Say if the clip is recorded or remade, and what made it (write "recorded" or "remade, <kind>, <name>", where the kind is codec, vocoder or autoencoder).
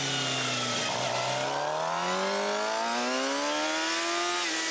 recorded